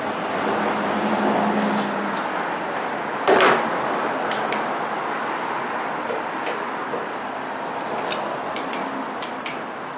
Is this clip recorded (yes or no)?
yes